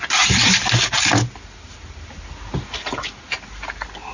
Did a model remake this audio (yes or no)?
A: no